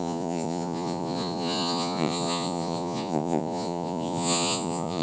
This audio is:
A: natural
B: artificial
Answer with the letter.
B